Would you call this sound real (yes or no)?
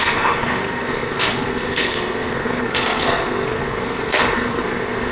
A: no